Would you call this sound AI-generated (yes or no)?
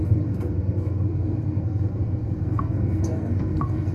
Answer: yes